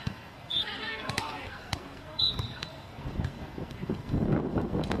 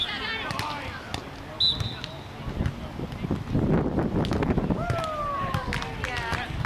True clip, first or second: second